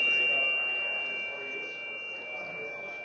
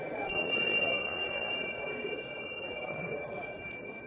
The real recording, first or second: first